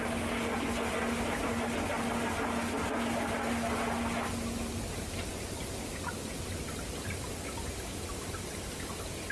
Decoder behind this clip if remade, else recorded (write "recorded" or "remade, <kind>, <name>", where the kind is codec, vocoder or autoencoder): recorded